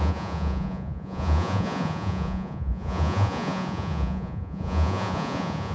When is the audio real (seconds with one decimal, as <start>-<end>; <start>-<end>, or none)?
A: none